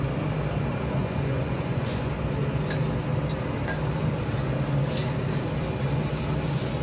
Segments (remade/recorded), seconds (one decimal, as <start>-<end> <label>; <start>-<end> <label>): 0.0-1.0 recorded; 1.0-2.1 remade; 2.1-6.8 recorded